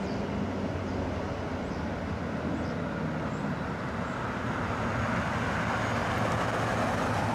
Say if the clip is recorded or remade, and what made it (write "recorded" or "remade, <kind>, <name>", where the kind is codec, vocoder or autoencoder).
recorded